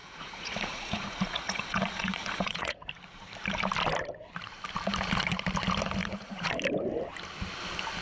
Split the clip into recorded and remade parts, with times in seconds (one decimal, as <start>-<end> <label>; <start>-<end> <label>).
0.0-2.9 remade; 2.9-6.0 recorded; 6.0-6.5 remade; 6.5-8.0 recorded